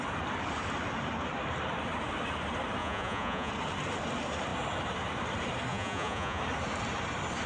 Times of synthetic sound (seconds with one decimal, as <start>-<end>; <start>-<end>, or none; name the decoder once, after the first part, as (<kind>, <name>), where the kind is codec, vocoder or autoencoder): 2.8-3.5 (vocoder, Vocos); 5.7-6.4